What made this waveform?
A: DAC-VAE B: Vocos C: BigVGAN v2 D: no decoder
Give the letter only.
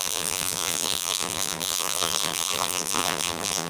C